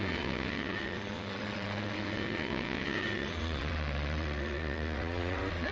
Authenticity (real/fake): fake